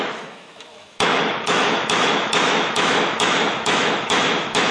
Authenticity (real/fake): fake